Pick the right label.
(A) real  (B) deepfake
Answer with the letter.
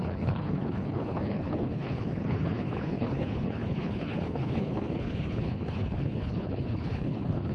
B